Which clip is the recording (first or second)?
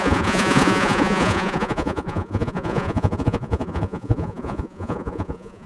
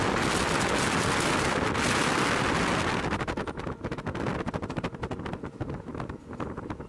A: second